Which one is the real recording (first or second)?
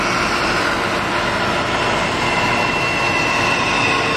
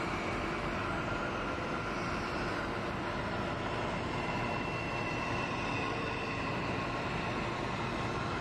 first